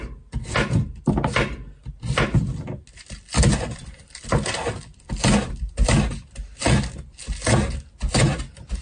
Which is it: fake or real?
real